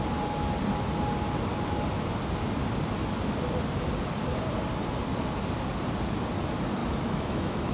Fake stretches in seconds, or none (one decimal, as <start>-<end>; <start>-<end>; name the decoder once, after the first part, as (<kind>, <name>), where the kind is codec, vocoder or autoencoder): 6.8-7.7 (autoencoder, DAC-VAE)